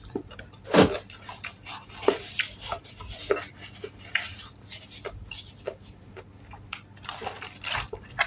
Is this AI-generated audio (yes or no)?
no